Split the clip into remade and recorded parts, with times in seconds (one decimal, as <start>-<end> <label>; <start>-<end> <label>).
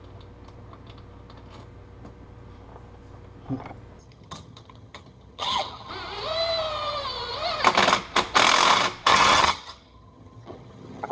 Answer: 0.0-4.0 recorded; 4.0-5.9 remade; 5.9-9.1 recorded; 9.1-11.1 remade